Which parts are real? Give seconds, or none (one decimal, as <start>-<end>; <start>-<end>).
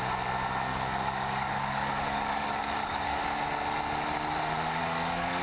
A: 0.0-0.7; 3.2-4.8